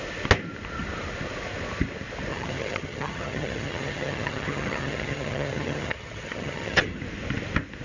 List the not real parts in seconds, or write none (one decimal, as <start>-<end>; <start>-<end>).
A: 2.3-7.0